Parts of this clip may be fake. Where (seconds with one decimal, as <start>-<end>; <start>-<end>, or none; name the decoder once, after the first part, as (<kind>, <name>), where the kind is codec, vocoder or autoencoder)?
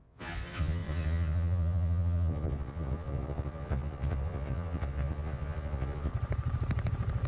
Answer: 0.0-6.1 (vocoder, Vocos)